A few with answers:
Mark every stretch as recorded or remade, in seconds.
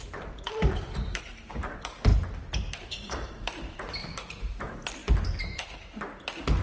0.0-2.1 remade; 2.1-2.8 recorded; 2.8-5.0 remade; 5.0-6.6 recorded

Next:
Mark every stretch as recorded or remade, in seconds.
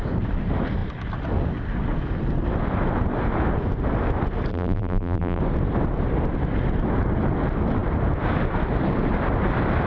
0.0-4.5 recorded; 4.5-5.4 remade; 5.4-9.9 recorded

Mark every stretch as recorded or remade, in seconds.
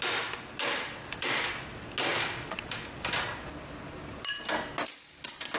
0.0-5.6 recorded